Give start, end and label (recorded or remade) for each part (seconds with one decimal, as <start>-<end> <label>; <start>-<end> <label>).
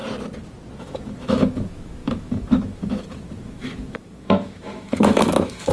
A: 0.0-0.8 recorded; 0.8-5.7 remade